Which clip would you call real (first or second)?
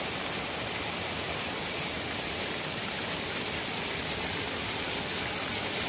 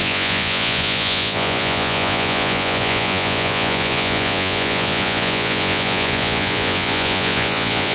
first